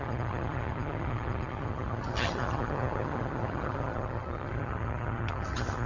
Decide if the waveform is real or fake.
fake